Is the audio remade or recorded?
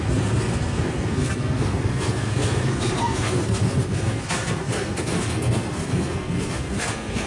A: remade